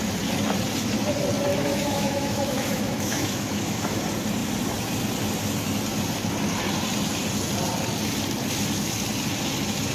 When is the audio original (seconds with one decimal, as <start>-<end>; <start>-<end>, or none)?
0.0-1.5; 4.0-9.9